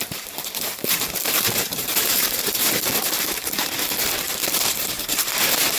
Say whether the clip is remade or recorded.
remade